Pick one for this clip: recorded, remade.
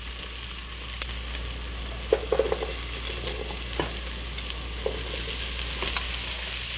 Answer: recorded